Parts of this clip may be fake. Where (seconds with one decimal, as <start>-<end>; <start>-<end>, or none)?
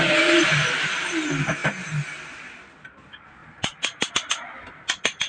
0.0-1.6; 2.4-3.4; 4.1-5.3